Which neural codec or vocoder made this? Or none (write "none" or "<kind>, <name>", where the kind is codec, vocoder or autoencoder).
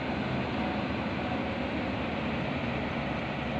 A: none